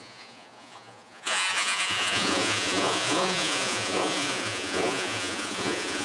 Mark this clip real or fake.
fake